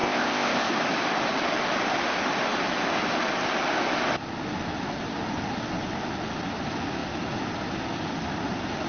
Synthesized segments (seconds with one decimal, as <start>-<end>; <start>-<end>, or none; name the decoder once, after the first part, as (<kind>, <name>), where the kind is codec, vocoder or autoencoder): 0.0-0.7 (codec, ZipCodec)